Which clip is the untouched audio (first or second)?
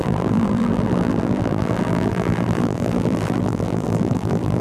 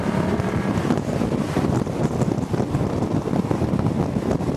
second